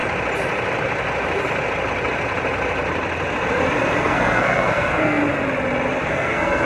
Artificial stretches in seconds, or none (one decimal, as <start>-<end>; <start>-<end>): 4.0-5.2; 6.1-6.7